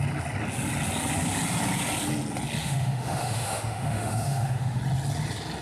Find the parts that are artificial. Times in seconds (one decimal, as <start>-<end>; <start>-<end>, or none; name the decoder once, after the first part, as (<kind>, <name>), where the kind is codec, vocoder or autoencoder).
2.6-4.8 (autoencoder, DAC-VAE)